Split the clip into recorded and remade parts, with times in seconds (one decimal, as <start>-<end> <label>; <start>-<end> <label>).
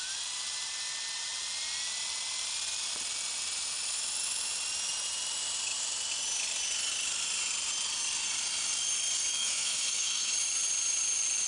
0.0-9.4 recorded; 9.4-10.3 remade; 10.3-11.5 recorded